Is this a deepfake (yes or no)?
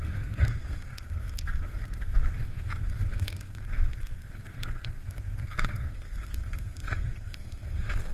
yes